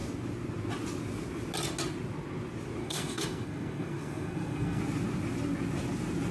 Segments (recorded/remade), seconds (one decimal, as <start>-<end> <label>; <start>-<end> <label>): 0.0-2.8 recorded; 2.8-4.8 remade; 4.8-6.3 recorded